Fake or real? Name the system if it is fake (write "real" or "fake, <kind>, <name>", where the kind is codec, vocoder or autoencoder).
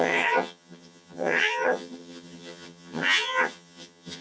fake, vocoder, HiFi-GAN